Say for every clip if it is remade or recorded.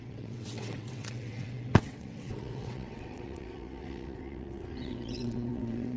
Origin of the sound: remade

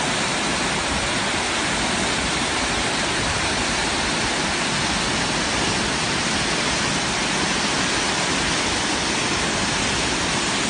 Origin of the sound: recorded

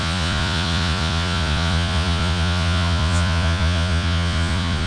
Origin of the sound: remade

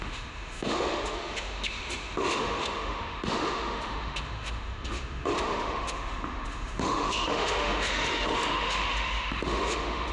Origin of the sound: remade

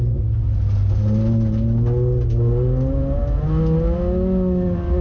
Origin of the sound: recorded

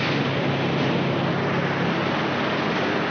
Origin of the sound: recorded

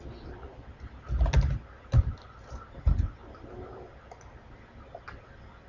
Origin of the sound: recorded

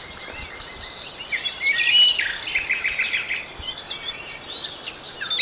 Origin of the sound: recorded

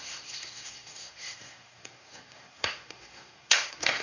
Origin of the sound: remade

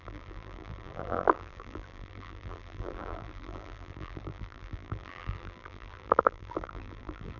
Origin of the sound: remade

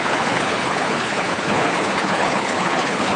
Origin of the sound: remade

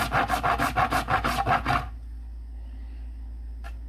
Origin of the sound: recorded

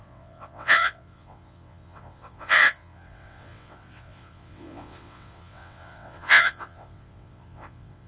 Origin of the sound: remade